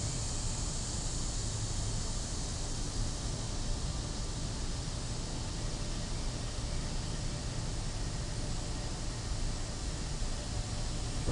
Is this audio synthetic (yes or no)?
no